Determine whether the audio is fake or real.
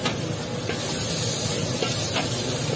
real